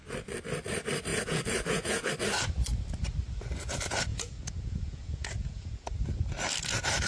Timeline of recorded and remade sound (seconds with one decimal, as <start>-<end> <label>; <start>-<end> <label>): 0.0-1.1 recorded; 1.1-2.1 remade; 2.1-4.1 recorded; 4.1-5.7 remade; 5.7-7.1 recorded